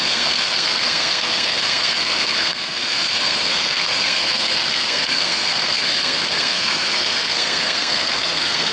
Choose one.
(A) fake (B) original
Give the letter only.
A